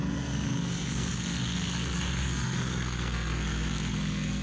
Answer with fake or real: fake